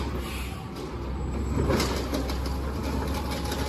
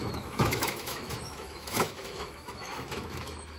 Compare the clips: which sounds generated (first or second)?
second